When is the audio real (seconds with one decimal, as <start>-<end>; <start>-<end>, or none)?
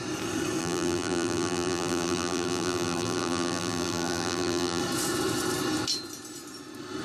0.0-0.6; 4.8-7.0